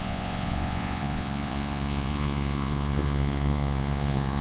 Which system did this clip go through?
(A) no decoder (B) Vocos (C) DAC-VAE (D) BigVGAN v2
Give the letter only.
B